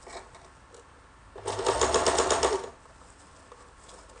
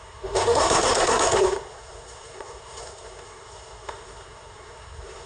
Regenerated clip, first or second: second